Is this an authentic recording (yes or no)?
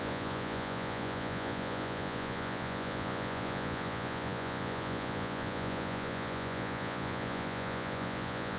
no